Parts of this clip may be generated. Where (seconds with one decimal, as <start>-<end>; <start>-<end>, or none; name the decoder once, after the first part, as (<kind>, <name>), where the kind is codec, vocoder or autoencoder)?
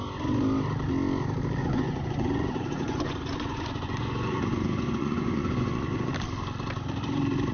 1.6-6.1 (vocoder, Vocos)